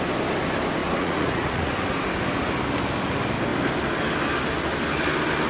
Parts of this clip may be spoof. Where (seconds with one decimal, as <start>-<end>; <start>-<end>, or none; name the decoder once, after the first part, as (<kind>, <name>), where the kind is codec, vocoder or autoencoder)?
0.8-1.7 (vocoder, Vocos)